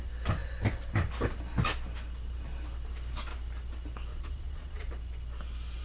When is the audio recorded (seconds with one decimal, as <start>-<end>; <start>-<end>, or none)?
0.0-4.1; 4.9-5.8